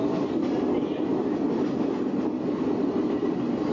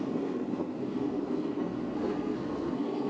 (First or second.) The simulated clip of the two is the second